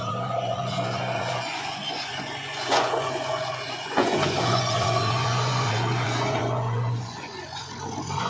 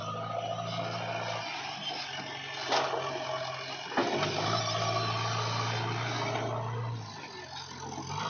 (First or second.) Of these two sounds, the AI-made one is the first